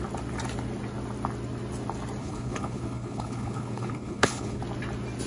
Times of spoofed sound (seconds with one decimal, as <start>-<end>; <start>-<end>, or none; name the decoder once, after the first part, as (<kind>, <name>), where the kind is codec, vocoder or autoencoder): 2.2-4.6 (codec, HILCodec)